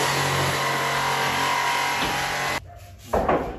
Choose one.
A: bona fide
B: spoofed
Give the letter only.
A